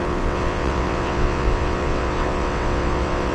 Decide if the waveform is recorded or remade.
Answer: remade